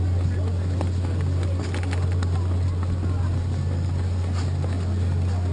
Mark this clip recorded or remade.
recorded